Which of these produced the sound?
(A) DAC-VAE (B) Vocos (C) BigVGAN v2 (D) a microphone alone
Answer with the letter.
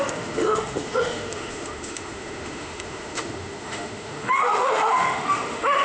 A